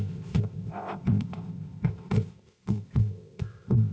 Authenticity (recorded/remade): remade